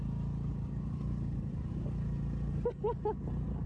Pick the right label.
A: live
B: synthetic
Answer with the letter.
A